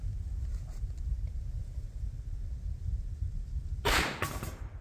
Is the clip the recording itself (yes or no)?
yes